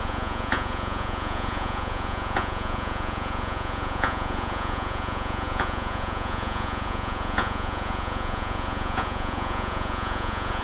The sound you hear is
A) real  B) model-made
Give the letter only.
B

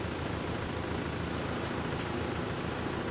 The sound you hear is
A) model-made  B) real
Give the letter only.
B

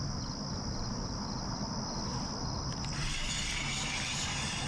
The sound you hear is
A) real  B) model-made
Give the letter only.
A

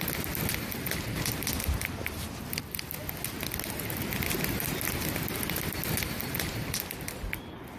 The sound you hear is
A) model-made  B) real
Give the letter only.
B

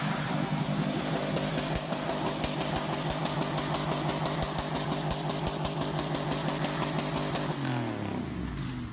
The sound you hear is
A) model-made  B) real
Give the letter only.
B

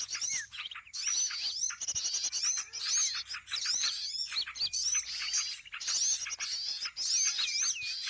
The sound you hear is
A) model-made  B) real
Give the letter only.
B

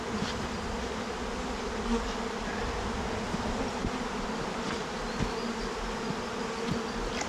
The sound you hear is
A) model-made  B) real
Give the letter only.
B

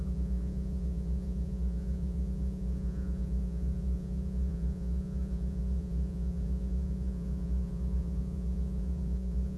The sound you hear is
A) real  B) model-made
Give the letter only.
B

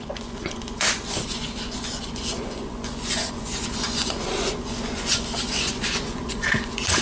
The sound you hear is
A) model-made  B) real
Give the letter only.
A